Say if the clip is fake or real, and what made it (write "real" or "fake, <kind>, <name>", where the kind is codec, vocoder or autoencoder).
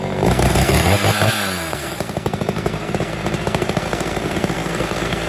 fake, codec, SNAC